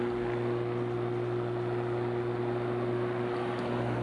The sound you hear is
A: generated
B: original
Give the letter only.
B